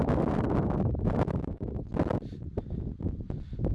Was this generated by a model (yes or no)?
no